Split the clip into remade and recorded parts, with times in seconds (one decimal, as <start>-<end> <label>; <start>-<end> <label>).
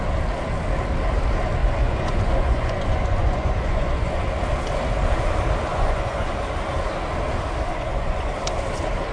0.0-1.6 recorded; 1.6-4.2 remade; 4.2-5.7 recorded; 5.7-6.3 remade; 6.3-7.7 recorded; 7.7-8.3 remade; 8.3-9.1 recorded